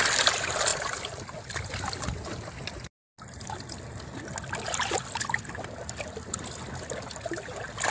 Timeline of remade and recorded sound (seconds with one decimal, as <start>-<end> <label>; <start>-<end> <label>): 0.0-7.9 recorded